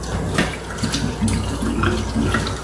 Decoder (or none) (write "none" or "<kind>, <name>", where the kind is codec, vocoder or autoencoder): none